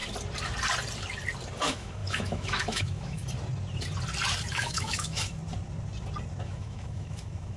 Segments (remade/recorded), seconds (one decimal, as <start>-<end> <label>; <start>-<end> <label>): 0.0-1.6 recorded; 1.6-3.2 remade; 3.2-4.5 recorded; 4.5-5.4 remade; 5.4-6.4 recorded; 6.4-7.6 remade